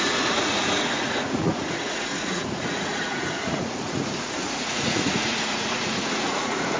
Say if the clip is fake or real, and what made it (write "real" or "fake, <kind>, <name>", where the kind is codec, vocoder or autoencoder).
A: fake, vocoder, Vocos